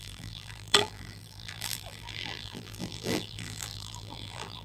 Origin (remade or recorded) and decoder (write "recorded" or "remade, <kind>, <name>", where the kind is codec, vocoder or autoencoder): remade, vocoder, BigVGAN v2